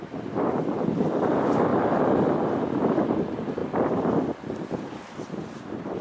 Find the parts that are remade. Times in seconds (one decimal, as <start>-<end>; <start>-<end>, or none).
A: 3.6-4.2